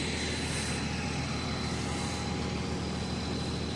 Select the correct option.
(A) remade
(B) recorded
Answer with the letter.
B